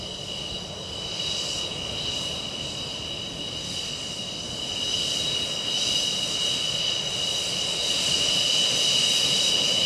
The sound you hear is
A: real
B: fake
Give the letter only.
A